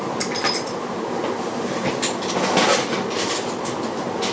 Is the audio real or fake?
real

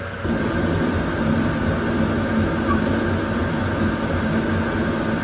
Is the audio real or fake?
real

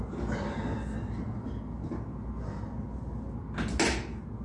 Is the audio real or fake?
real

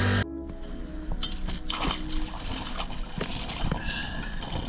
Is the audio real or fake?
real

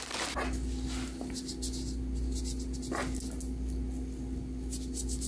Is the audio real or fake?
real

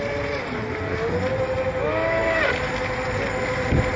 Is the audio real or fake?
fake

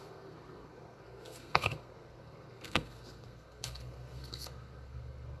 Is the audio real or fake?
fake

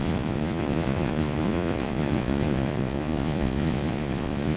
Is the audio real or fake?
fake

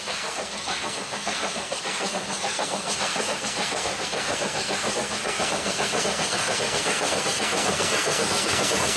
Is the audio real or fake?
fake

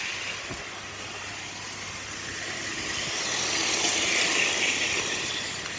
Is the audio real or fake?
real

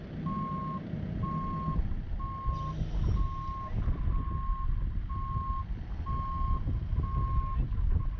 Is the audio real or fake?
real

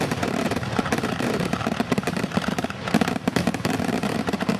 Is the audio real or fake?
fake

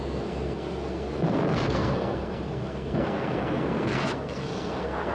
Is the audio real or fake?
fake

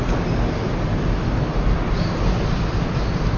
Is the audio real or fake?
real